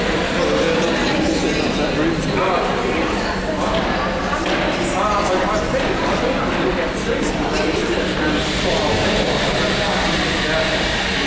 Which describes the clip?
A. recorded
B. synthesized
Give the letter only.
A